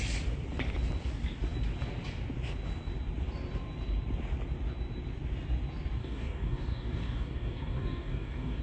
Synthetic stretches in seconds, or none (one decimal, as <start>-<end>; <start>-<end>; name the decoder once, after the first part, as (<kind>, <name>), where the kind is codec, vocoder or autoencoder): 6.0-8.6 (codec, DAC)